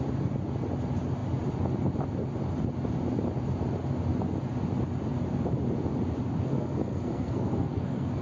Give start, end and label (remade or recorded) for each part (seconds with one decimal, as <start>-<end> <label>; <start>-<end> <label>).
0.0-6.4 recorded; 6.4-8.2 remade